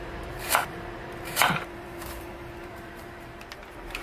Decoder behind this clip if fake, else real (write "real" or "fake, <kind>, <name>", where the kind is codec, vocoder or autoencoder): fake, vocoder, BigVGAN v2